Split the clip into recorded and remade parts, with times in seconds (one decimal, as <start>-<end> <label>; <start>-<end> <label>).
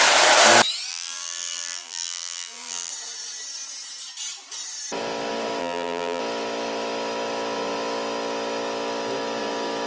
0.0-0.9 recorded; 0.9-2.9 remade; 2.9-5.6 recorded; 5.6-6.2 remade; 6.2-9.9 recorded